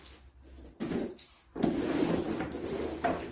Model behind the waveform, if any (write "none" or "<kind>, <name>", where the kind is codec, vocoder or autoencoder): none